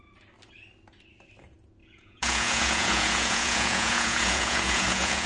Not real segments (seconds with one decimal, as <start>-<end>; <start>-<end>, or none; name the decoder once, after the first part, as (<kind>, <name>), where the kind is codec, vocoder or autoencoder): 1.8-5.3 (vocoder, Vocos)